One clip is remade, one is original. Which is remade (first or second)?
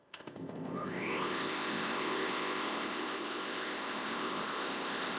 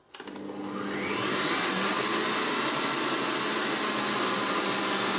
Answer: first